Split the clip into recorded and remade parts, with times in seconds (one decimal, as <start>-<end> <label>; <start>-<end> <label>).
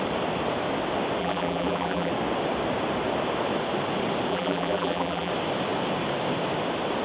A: 0.0-1.2 recorded; 1.2-2.1 remade; 2.1-4.3 recorded; 4.3-5.3 remade; 5.3-7.0 recorded